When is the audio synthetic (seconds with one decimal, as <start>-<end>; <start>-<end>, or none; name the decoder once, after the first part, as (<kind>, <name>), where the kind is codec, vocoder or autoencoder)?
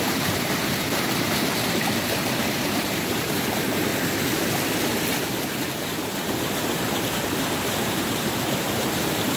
0.0-3.9 (vocoder, BigVGAN v2); 5.5-9.4